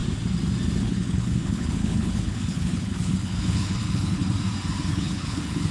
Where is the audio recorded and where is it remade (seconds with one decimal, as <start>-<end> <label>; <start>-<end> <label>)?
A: 0.0-0.8 recorded; 0.8-4.2 remade; 4.2-4.9 recorded; 4.9-5.7 remade